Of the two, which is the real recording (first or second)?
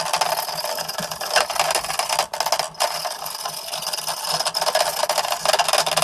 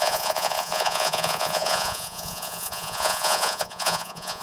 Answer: first